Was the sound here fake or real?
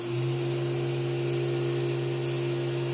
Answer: real